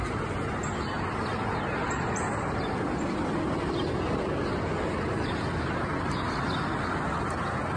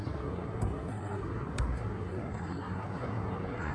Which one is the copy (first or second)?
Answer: second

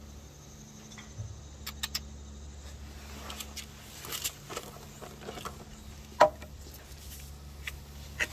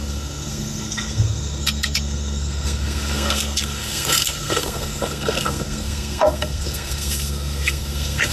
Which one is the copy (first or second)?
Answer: second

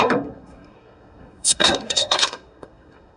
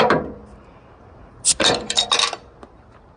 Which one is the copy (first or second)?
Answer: first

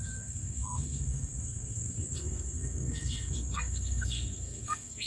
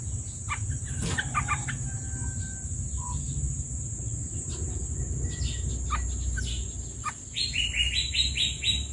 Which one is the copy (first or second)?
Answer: first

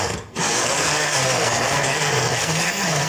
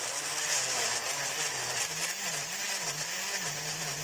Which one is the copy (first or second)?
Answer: first